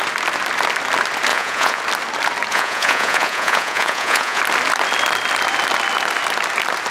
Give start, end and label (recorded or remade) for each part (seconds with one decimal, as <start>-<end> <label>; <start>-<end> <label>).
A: 0.0-1.3 recorded; 1.3-1.8 remade; 1.8-2.5 recorded; 2.5-4.4 remade; 4.4-6.9 recorded